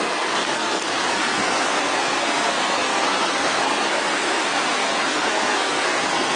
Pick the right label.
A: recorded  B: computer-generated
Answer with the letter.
B